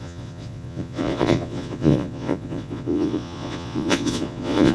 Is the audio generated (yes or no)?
yes